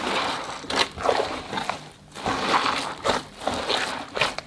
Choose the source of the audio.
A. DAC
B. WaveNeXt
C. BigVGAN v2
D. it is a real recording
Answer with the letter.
D